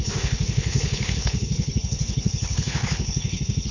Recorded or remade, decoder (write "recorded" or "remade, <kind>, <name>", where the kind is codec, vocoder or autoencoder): remade, codec, HILCodec